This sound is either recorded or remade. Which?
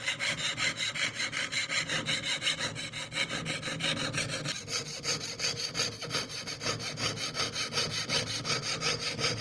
recorded